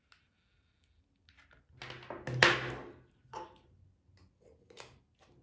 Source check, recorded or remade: recorded